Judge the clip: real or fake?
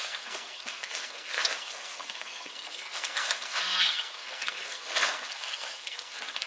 fake